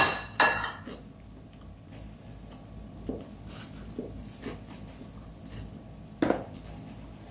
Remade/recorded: recorded